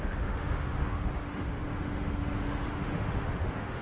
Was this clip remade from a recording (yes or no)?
yes